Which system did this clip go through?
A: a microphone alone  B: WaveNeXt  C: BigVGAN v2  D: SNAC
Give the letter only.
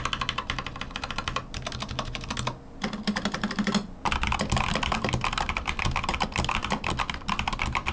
A